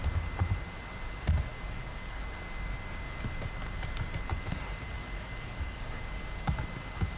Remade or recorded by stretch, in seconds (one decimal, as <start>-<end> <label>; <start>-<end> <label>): 0.0-1.5 recorded; 1.5-2.3 remade; 2.3-5.0 recorded; 5.0-6.0 remade; 6.0-7.2 recorded

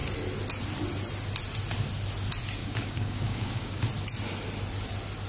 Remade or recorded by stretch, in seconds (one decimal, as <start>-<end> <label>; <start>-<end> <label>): 0.0-2.6 recorded; 2.6-3.8 remade; 3.8-5.3 recorded